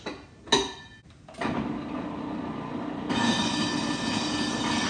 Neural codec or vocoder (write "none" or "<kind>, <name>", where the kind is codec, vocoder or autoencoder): none